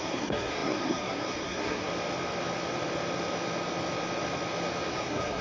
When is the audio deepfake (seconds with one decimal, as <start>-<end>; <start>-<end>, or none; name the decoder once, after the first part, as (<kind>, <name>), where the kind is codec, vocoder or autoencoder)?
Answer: 0.0-1.9 (codec, SNAC); 4.9-5.4

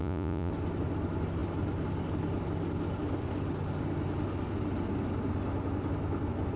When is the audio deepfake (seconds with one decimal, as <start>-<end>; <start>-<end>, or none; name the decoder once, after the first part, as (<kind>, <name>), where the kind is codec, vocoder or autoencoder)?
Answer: 0.0-0.5 (vocoder, Vocos)

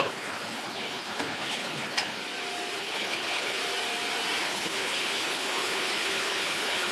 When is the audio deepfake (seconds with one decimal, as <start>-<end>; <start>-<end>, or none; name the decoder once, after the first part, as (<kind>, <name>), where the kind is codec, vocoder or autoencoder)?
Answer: 0.0-2.2 (codec, HILCodec); 2.8-3.6; 4.4-6.9

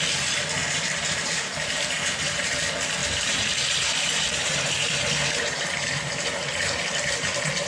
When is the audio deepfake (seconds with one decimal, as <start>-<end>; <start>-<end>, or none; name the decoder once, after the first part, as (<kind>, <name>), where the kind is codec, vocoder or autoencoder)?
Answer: 0.6-2.4 (vocoder, BigVGAN v2); 3.0-7.7

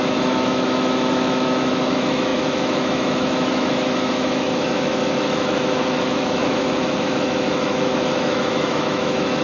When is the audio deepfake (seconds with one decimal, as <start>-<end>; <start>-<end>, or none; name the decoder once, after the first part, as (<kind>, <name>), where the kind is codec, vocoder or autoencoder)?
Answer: 0.0-9.4 (autoencoder, DAC-VAE)